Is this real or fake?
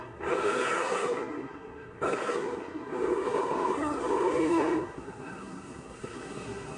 fake